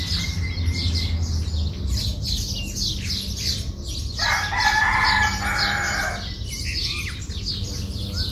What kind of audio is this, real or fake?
real